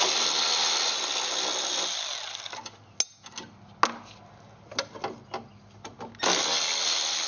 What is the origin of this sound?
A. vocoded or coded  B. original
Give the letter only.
B